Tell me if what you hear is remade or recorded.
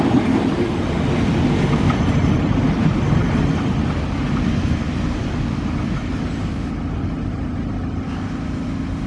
recorded